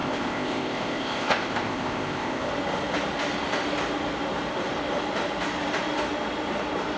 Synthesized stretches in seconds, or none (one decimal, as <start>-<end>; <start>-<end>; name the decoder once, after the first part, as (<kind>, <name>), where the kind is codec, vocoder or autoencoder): 0.0-2.5 (codec, ZipCodec)